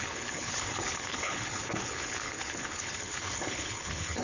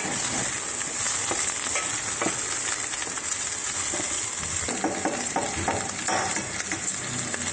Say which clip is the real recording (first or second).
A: second